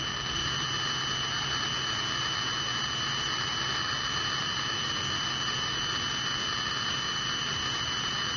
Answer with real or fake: real